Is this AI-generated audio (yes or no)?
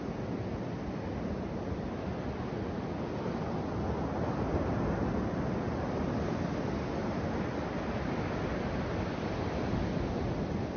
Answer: no